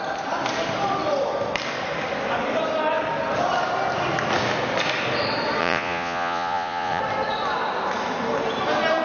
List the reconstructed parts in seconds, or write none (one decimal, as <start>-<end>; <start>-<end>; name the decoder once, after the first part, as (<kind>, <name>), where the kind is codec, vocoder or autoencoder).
5.6-7.0 (vocoder, Vocos)